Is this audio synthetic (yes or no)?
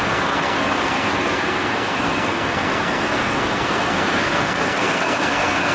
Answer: yes